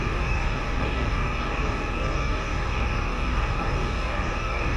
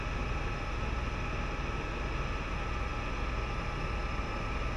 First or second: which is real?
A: second